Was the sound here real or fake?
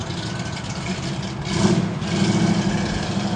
real